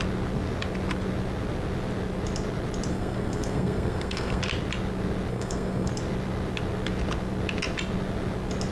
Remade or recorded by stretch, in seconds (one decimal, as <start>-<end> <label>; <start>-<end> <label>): 0.0-2.9 recorded; 2.9-4.4 remade; 4.4-5.3 recorded; 5.3-5.9 remade; 5.9-8.7 recorded